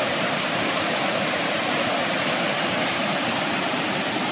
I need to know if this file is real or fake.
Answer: fake